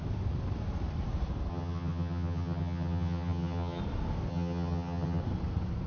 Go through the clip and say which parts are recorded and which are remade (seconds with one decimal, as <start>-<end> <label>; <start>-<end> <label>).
0.0-1.5 recorded; 1.5-3.8 remade; 3.8-4.3 recorded; 4.3-5.2 remade; 5.2-5.9 recorded